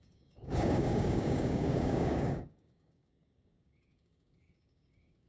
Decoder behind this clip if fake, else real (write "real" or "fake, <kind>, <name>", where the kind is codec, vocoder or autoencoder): fake, codec, DAC